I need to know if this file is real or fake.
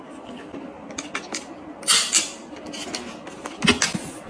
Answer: real